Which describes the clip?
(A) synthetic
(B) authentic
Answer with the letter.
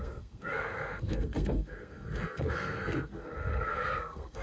A